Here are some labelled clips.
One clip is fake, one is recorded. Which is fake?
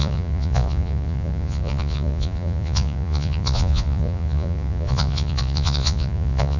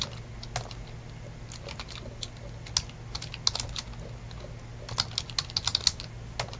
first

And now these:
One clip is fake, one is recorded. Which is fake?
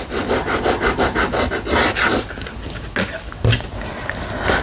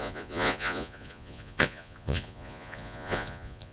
second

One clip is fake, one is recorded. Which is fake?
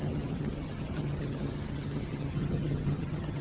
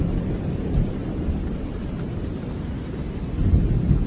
first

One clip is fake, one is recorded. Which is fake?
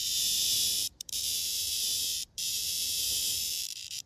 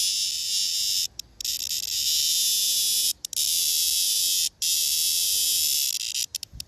first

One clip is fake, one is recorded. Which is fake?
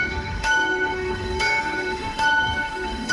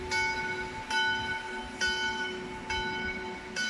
first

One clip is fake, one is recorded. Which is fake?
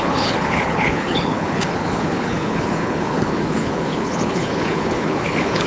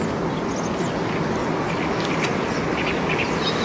first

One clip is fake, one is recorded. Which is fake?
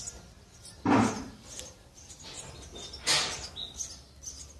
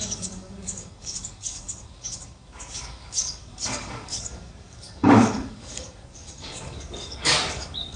second